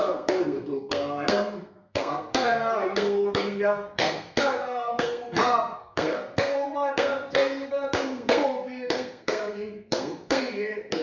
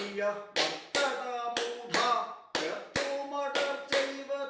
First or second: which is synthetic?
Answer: first